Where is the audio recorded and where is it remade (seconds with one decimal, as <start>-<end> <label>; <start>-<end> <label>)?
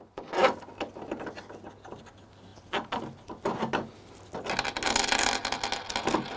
0.0-6.4 recorded